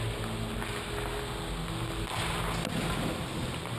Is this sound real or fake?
real